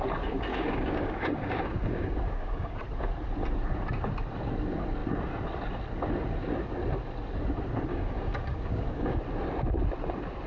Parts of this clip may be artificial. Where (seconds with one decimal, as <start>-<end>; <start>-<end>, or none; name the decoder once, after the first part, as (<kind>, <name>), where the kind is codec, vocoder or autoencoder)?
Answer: 0.5-2.8 (codec, DAC); 7.9-9.2

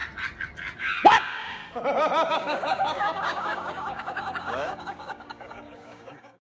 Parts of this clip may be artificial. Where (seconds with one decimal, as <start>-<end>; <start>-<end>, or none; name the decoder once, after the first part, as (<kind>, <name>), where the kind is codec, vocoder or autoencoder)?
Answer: 0.8-1.6 (codec, DAC); 2.3-6.5

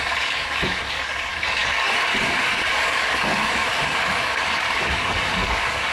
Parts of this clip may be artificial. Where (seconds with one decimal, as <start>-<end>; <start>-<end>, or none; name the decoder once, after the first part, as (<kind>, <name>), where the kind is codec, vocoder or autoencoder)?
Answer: 0.0-5.9 (codec, DAC)

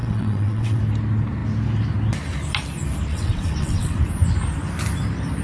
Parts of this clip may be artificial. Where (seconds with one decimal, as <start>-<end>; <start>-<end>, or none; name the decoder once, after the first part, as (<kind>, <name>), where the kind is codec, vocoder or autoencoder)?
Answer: 0.0-0.8 (vocoder, WaveNeXt); 3.1-4.0

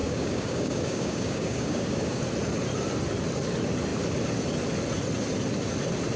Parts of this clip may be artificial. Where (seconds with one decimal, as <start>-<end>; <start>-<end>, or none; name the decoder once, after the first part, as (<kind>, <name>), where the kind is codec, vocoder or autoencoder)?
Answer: 0.0-2.2 (codec, DAC)